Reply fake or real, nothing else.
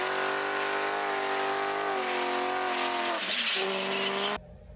real